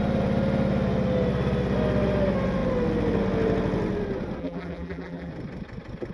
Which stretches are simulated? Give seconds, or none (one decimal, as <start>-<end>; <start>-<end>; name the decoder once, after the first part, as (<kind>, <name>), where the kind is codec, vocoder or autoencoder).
4.4-5.3 (vocoder, BigVGAN v2)